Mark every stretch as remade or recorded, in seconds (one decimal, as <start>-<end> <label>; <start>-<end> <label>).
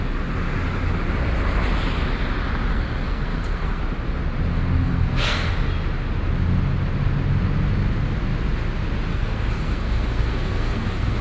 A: 0.0-2.7 recorded; 2.7-3.8 remade; 3.8-4.5 recorded; 4.5-5.5 remade; 5.5-9.1 recorded; 9.1-11.2 remade